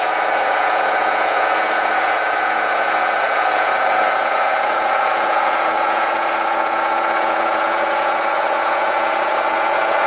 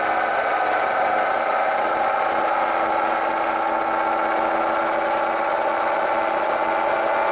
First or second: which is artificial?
first